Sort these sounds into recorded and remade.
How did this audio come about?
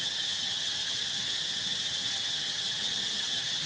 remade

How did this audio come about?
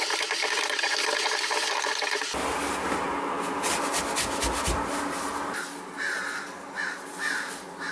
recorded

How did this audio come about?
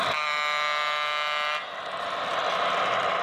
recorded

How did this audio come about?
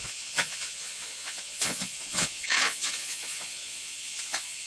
remade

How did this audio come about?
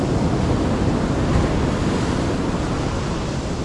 recorded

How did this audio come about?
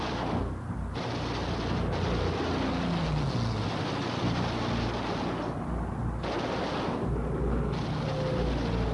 recorded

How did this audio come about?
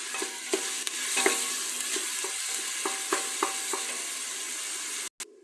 recorded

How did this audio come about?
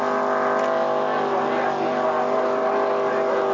recorded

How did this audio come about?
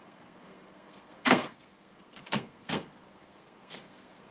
remade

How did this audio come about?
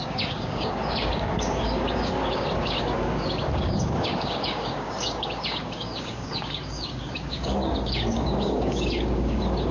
remade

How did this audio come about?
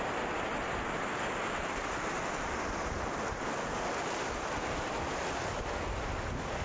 recorded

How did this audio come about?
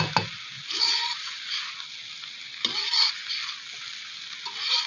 recorded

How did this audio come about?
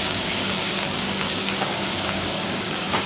remade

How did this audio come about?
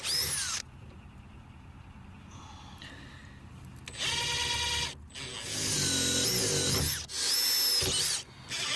recorded